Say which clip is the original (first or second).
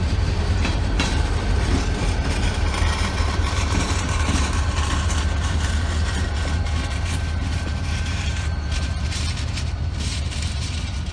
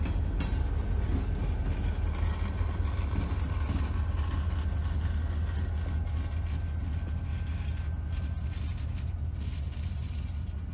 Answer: second